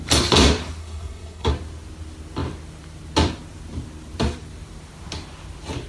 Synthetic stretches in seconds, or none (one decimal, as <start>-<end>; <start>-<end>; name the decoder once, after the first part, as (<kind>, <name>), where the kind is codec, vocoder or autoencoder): 0.8-1.5 (codec, SNAC)